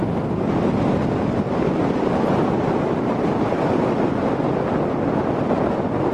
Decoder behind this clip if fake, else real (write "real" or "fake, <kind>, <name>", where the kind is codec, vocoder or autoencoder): real